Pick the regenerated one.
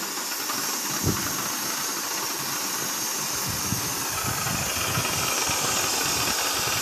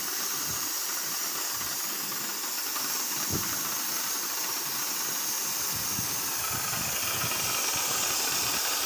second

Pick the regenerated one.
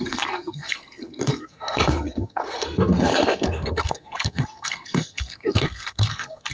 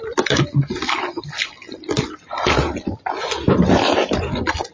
first